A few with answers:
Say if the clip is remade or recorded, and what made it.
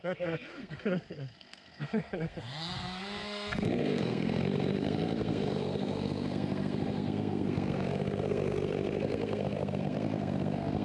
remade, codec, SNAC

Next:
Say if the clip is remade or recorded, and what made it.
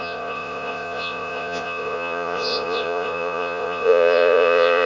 remade, vocoder, Vocos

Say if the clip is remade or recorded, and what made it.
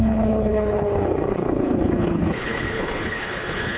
remade, codec, HILCodec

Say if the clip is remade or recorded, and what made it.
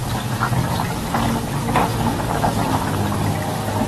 recorded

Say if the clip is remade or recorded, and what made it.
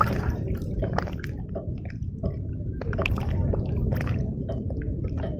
remade, vocoder, BigVGAN v2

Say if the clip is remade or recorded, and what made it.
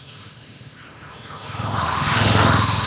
remade, autoencoder, DAC-VAE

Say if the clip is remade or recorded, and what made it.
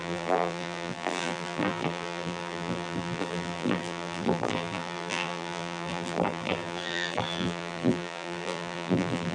remade, vocoder, BigVGAN v2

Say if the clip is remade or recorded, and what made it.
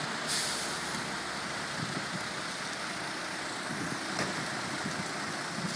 recorded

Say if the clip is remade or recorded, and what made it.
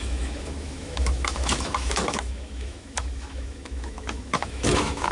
remade, autoencoder, DAC-VAE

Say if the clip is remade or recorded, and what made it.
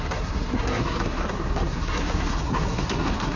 remade, codec, SNAC